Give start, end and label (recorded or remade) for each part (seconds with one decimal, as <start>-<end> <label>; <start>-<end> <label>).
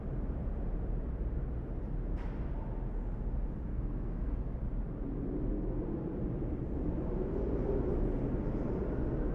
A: 0.0-3.7 recorded; 3.7-4.4 remade; 4.4-9.3 recorded